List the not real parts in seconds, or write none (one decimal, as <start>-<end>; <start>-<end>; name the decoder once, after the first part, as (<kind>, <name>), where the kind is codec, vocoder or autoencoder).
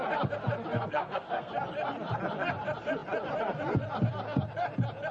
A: 0.7-1.5 (codec, SNAC)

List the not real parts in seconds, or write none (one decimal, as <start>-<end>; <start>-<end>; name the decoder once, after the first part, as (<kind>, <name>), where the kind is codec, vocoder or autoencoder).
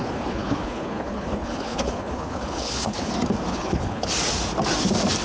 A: 0.0-3.1 (codec, HILCodec); 3.5-4.1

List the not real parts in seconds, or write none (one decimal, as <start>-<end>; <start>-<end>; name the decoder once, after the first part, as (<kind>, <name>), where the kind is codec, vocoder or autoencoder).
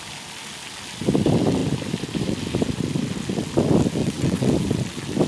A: 4.0-4.5 (vocoder, WaveNeXt)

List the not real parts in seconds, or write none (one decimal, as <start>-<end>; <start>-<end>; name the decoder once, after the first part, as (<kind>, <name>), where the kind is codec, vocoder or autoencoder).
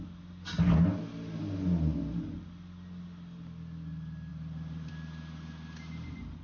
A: 4.3-4.9 (vocoder, BigVGAN v2)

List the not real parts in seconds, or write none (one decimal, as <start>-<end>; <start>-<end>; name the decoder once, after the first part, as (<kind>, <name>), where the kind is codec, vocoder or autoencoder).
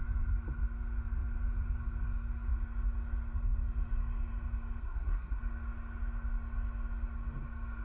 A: 4.8-5.4 (codec, SNAC)